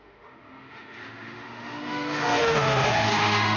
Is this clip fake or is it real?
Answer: fake